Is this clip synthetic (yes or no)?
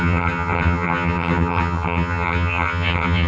yes